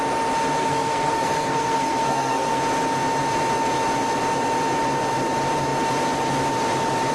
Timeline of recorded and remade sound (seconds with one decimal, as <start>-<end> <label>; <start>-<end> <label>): 0.0-0.6 recorded; 0.6-2.6 remade; 2.6-7.1 recorded